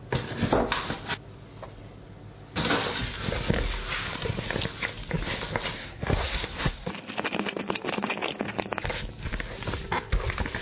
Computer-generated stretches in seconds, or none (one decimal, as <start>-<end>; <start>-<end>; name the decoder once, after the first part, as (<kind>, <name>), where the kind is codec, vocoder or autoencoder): 5.8-6.9 (codec, SNAC)